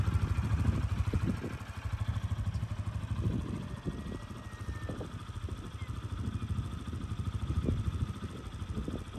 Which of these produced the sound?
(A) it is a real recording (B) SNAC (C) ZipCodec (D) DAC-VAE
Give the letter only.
A